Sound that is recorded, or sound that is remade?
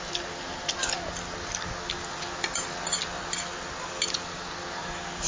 recorded